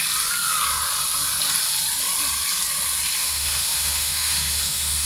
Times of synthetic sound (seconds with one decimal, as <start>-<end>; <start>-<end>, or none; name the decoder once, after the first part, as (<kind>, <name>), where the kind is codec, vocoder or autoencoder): 3.2-5.1 (autoencoder, DAC-VAE)